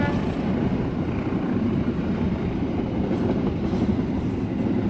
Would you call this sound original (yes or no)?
yes